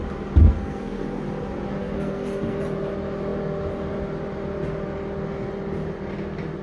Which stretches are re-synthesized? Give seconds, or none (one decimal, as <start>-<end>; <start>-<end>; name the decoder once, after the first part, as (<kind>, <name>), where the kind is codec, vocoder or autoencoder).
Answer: 0.4-1.2 (codec, SNAC); 1.8-2.6